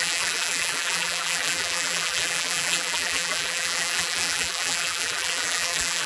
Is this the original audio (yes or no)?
no